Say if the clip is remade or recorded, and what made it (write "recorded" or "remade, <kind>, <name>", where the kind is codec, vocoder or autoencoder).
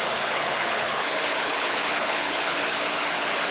remade, codec, HILCodec